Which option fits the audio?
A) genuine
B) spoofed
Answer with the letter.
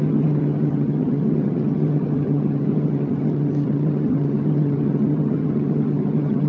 B